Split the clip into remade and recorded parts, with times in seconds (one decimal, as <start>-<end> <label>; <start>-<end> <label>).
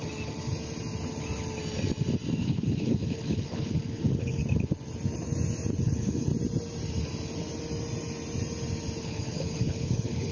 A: 0.0-2.4 recorded; 2.4-4.4 remade; 4.4-5.8 recorded; 5.8-6.3 remade; 6.3-9.0 recorded; 9.0-10.3 remade